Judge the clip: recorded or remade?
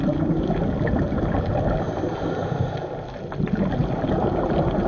recorded